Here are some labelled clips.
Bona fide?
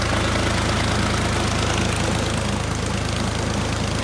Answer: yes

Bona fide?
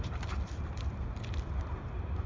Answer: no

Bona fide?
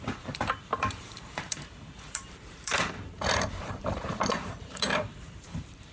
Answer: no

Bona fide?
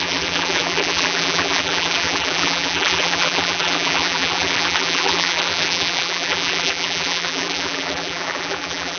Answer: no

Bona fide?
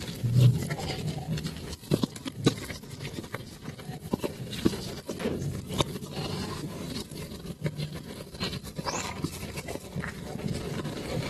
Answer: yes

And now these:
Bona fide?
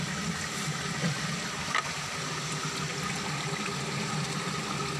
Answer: yes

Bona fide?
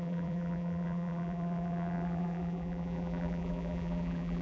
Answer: no